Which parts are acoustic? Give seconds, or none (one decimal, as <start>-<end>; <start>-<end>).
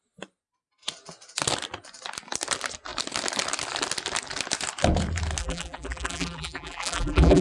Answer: 0.0-5.4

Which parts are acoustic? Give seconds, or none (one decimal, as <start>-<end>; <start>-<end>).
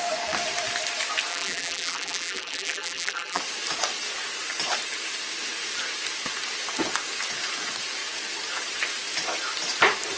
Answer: 0.0-1.3; 3.4-10.2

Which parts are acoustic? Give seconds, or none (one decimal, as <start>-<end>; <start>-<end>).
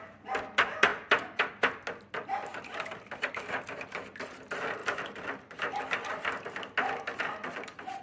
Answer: 0.0-2.5; 3.1-4.8; 5.8-8.0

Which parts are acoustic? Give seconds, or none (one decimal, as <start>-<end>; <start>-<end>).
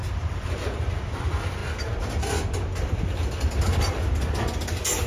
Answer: 1.6-5.1